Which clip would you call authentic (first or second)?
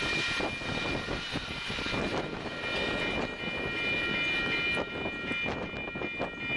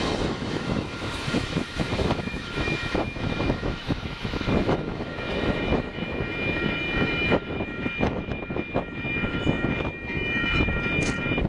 first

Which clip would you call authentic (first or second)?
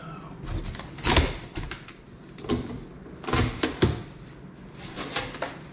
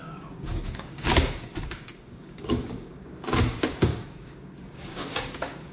first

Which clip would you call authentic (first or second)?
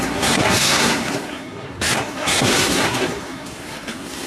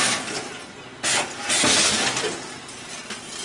second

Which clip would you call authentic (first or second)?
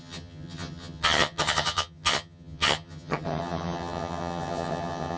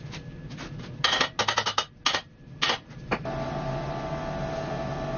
second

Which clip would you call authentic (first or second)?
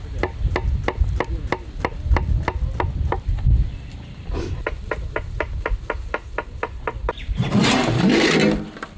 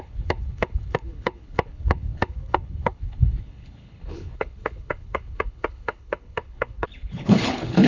first